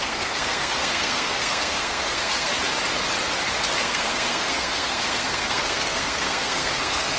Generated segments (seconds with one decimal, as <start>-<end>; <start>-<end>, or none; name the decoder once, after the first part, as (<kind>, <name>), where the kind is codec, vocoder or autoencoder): 0.0-2.5 (codec, SNAC); 3.8-7.2